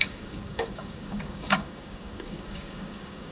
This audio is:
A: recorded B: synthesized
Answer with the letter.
B